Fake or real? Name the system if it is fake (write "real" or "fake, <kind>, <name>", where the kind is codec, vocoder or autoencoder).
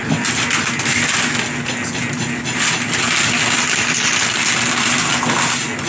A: real